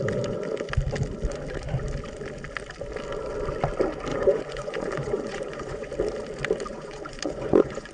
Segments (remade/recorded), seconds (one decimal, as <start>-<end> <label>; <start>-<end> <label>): 0.0-4.1 recorded; 4.1-5.9 remade; 5.9-6.7 recorded; 6.7-7.9 remade